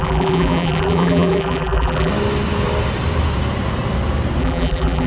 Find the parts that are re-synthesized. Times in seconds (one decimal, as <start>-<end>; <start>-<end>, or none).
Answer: 0.0-2.1; 4.4-5.1